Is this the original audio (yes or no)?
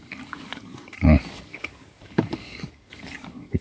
no